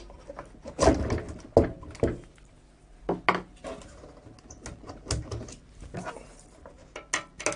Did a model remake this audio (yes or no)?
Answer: no